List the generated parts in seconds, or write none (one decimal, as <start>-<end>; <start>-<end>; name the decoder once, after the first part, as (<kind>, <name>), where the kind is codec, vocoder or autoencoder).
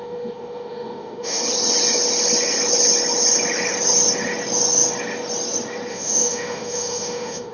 0.0-1.4 (autoencoder, DAC-VAE); 5.9-7.5